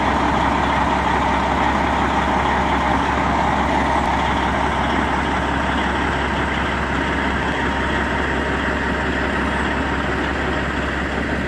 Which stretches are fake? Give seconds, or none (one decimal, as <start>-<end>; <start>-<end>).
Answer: 2.9-3.6